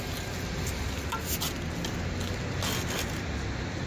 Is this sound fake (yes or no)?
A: no